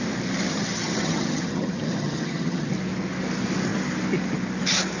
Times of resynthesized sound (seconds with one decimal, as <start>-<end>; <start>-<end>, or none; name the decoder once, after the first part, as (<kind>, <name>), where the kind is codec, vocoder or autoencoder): 0.5-2.7 (vocoder, HiFi-GAN)

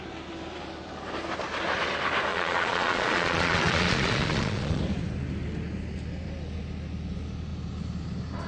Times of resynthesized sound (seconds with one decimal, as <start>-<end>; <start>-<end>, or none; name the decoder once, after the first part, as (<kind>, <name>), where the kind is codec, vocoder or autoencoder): 2.3-4.8 (vocoder, Vocos)

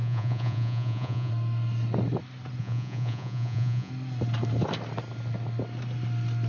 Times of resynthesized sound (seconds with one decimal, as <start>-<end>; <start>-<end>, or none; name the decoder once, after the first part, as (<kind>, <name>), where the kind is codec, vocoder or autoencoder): 0.0-1.3 (vocoder, Vocos); 2.6-3.9

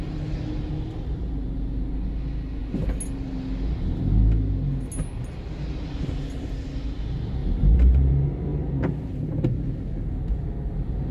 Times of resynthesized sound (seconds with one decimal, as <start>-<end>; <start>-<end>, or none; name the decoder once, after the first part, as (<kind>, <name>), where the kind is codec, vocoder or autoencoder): 7.4-8.1 (vocoder, BigVGAN v2)

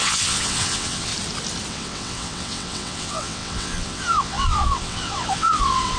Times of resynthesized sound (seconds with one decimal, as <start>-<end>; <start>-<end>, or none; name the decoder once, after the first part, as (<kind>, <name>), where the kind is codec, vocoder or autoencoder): 0.0-1.1 (vocoder, WaveNeXt); 1.7-6.0